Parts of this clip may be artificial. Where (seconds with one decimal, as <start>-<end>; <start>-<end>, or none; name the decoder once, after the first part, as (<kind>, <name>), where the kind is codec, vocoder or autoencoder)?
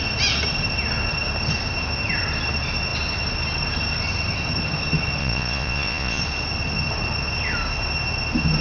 5.2-6.2 (vocoder, Vocos)